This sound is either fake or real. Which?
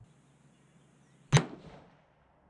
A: real